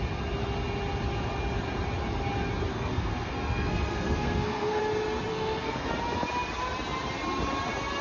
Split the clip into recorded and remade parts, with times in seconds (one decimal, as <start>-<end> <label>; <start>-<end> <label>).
0.0-2.7 recorded; 2.7-4.8 remade; 4.8-5.3 recorded; 5.3-5.9 remade; 5.9-8.0 recorded